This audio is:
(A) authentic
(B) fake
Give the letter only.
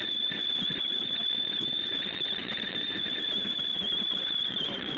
B